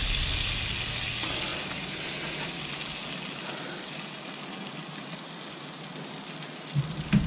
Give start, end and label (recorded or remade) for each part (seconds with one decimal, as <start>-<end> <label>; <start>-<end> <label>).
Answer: 0.0-7.3 recorded